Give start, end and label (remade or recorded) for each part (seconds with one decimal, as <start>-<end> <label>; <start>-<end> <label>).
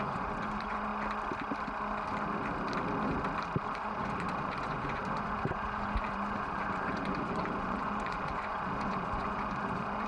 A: 0.0-0.9 remade; 0.9-3.8 recorded; 3.8-10.1 remade